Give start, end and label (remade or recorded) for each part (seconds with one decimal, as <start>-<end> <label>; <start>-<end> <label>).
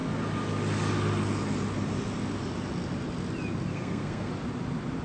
0.0-3.7 recorded; 3.7-4.3 remade; 4.3-5.0 recorded